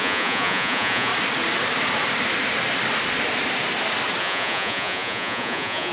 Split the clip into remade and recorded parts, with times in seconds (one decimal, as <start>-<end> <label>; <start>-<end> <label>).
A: 0.0-1.1 remade; 1.1-4.2 recorded; 4.2-5.9 remade